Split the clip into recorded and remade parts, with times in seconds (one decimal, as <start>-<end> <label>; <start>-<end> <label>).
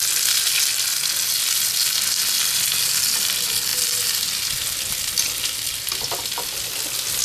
0.0-7.2 recorded